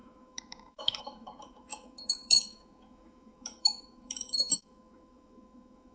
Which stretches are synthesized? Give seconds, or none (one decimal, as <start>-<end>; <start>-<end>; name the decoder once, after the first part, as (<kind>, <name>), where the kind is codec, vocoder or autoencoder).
0.0-5.9 (autoencoder, DAC-VAE)